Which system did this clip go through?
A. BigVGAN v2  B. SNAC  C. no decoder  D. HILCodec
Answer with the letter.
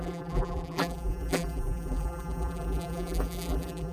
A